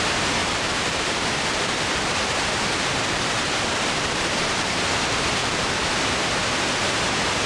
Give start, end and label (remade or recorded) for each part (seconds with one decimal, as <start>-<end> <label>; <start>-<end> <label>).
0.0-0.4 recorded; 0.4-4.9 remade; 4.9-5.4 recorded; 5.4-5.9 remade; 5.9-7.5 recorded

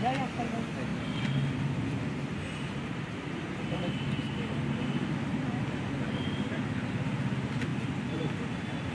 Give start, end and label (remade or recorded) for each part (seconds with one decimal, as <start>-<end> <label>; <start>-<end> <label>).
0.0-8.9 recorded

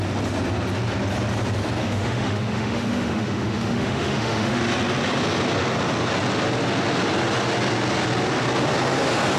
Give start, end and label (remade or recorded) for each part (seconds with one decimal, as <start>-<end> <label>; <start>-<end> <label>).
0.0-1.8 recorded; 1.8-4.6 remade; 4.6-9.4 recorded

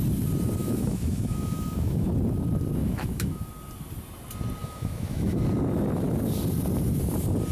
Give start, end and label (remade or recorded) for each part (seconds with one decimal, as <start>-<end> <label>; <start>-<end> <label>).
0.0-0.6 recorded; 0.6-2.1 remade; 2.1-2.8 recorded; 2.8-3.5 remade; 3.5-4.6 recorded; 4.6-5.4 remade; 5.4-7.5 recorded

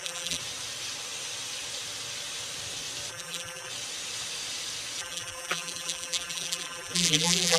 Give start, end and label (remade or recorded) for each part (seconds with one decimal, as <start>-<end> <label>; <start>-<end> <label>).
0.0-0.4 remade; 0.4-3.1 recorded; 3.1-3.7 remade; 3.7-5.0 recorded; 5.0-7.6 remade

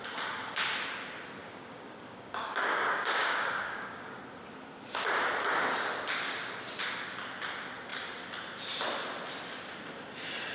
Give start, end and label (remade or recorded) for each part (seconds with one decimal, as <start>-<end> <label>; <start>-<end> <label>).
0.0-1.4 recorded; 1.4-4.2 remade; 4.2-10.5 recorded

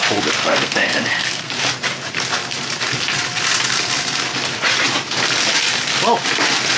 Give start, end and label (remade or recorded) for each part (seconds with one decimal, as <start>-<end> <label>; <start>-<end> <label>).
0.0-0.4 recorded; 0.4-1.5 remade; 1.5-6.8 recorded

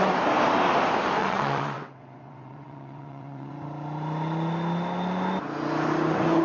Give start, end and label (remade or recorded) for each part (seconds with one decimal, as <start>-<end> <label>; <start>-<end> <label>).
0.0-1.2 recorded; 1.2-3.5 remade; 3.5-6.4 recorded